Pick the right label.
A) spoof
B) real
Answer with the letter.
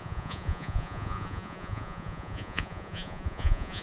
A